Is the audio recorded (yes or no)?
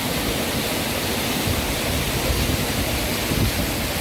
yes